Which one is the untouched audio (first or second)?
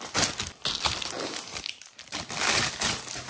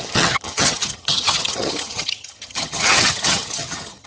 first